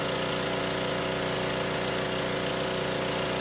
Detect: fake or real fake